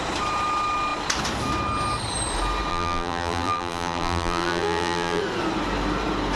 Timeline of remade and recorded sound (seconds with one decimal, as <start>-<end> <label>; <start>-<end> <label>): 0.0-2.7 recorded; 2.7-5.2 remade; 5.2-6.4 recorded